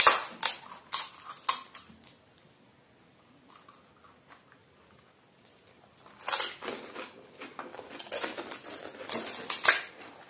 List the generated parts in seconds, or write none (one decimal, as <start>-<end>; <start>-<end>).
none

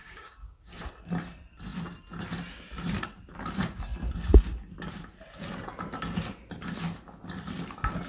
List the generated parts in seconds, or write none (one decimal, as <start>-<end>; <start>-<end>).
0.0-0.8

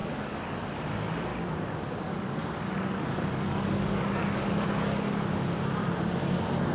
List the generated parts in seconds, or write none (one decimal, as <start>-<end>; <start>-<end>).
0.0-0.7; 1.3-5.3

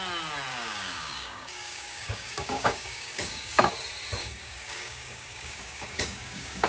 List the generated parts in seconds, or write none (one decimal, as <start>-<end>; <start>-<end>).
0.5-3.7; 4.2-6.7

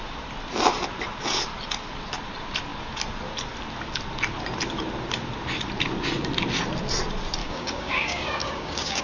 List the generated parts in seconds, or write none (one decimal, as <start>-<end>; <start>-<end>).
7.4-9.0

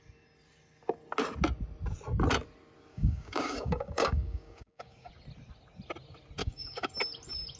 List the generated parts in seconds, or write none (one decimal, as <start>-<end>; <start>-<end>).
2.9-5.1; 6.4-6.9

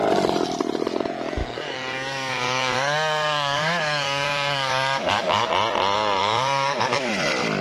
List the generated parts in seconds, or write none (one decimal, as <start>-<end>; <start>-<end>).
1.4-5.5; 6.2-7.1